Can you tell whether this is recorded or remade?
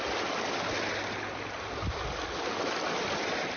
recorded